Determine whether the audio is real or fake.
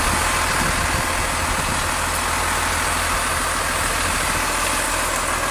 real